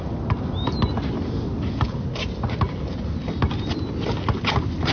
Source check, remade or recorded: recorded